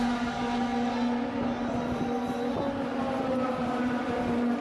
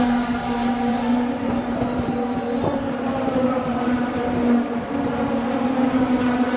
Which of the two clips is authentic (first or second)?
first